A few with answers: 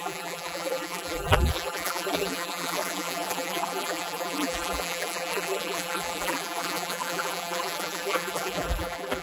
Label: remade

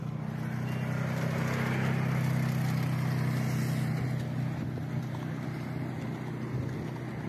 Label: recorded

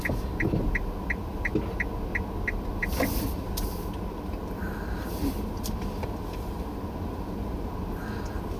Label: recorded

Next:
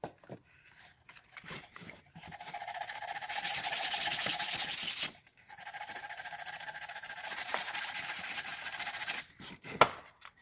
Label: remade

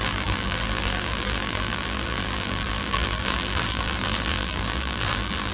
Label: remade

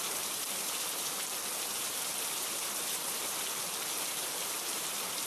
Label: remade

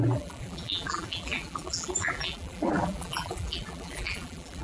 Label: remade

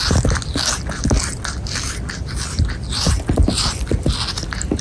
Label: recorded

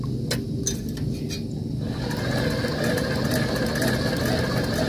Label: recorded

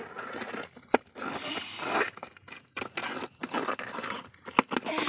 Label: recorded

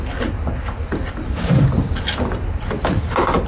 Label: recorded